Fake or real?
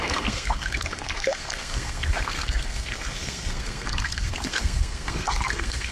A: fake